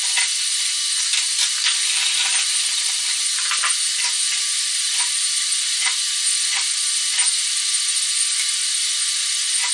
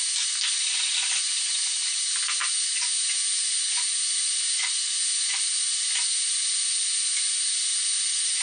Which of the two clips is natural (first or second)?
second